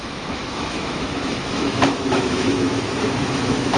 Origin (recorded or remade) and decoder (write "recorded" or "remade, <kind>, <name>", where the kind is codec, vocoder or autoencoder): remade, autoencoder, DAC-VAE